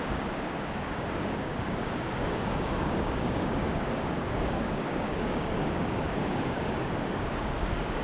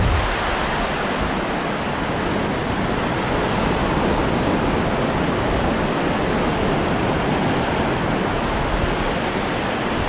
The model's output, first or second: first